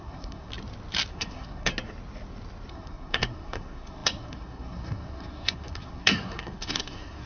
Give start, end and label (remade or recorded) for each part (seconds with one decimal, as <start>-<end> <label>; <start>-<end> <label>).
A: 0.0-0.5 remade; 0.5-1.1 recorded; 1.1-1.7 remade; 1.7-2.7 recorded; 2.7-7.3 remade